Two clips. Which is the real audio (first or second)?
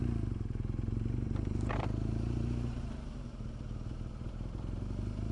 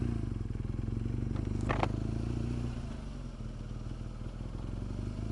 second